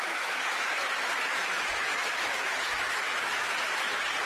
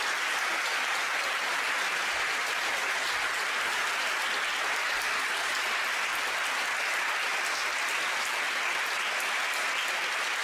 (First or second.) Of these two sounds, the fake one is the first